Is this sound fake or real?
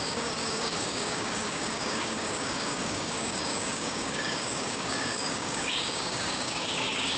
fake